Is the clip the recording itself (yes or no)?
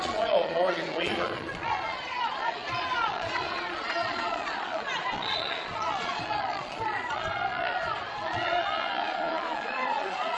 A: no